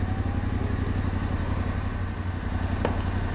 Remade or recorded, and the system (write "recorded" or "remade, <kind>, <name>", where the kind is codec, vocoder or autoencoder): recorded